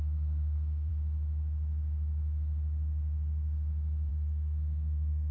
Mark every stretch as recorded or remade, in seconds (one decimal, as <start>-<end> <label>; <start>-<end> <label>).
0.0-0.9 remade; 0.9-4.1 recorded; 4.1-5.3 remade